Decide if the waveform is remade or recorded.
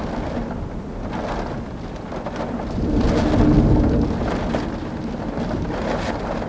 recorded